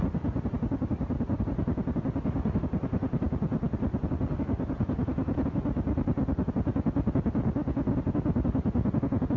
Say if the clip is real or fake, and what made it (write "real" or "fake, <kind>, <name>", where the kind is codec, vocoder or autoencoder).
real